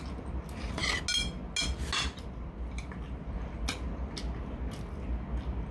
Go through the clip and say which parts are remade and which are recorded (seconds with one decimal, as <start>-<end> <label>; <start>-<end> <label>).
0.0-5.7 recorded